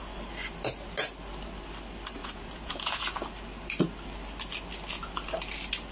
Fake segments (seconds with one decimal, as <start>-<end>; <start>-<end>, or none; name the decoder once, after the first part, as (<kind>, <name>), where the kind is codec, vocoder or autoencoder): 2.2-3.0 (vocoder, Vocos)